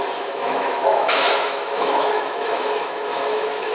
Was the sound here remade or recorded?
remade